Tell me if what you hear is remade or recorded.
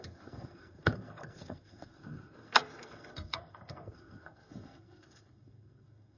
remade